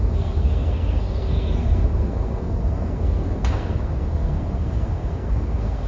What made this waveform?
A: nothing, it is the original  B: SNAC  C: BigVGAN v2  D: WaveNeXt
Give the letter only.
B